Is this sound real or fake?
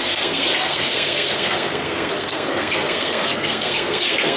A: fake